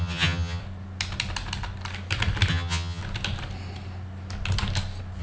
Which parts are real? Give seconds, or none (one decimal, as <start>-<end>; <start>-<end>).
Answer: 0.6-2.5; 3.0-5.2